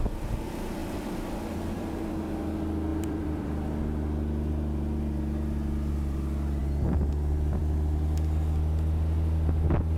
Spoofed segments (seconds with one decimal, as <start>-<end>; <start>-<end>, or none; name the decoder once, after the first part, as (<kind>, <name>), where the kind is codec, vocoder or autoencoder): 0.8-2.1 (vocoder, BigVGAN v2); 2.9-3.8